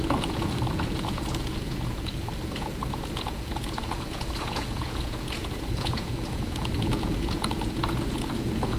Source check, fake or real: fake